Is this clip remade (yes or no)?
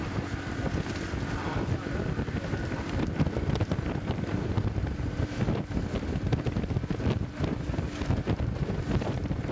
no